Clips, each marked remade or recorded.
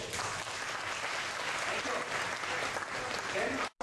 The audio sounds recorded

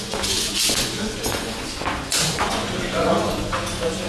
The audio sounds remade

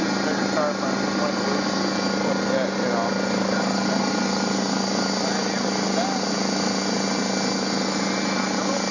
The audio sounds recorded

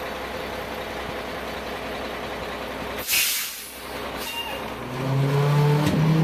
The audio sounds recorded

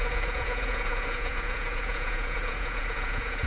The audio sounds remade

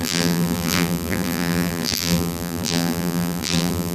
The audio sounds remade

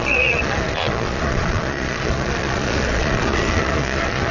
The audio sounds remade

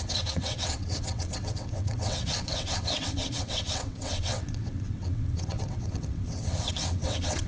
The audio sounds remade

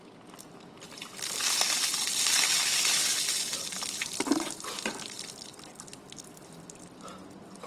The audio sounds recorded